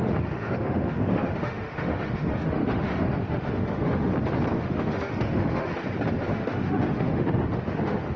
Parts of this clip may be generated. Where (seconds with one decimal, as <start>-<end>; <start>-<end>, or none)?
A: 0.0-4.1; 4.6-5.8; 6.3-8.2